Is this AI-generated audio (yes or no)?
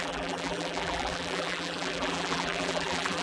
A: yes